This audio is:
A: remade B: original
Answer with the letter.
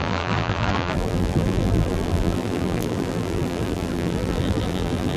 A